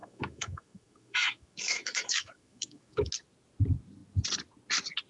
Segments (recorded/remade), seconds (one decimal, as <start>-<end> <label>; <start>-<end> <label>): 0.0-3.1 remade; 3.1-5.1 recorded